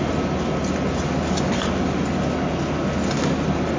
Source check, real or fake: real